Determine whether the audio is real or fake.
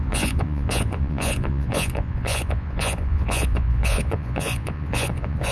fake